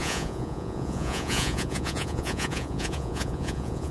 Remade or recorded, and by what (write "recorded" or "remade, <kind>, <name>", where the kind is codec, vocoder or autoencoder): remade, vocoder, Vocos